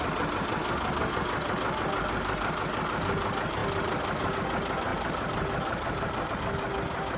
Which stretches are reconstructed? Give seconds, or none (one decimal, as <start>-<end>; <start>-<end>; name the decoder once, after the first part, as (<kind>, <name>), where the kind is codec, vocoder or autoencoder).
4.9-6.3 (vocoder, BigVGAN v2)